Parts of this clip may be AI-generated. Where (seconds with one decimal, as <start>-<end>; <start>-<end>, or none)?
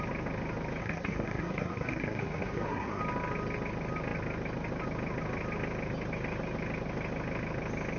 0.8-3.0